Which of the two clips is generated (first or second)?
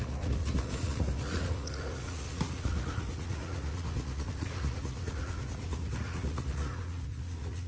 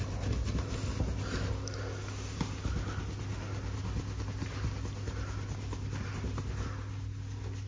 first